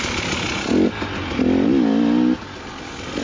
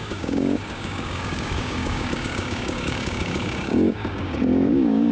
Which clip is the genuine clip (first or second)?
first